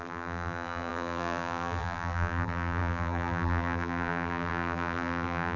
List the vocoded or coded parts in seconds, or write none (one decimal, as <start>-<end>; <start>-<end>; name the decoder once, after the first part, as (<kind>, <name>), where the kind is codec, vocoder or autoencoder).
0.0-5.6 (vocoder, BigVGAN v2)